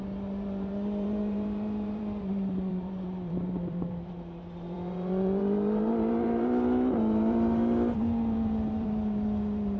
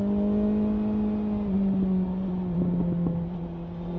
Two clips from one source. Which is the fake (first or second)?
first